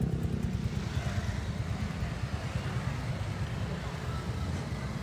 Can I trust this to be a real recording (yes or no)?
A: yes